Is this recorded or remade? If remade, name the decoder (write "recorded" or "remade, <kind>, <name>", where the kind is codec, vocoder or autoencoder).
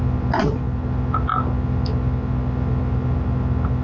recorded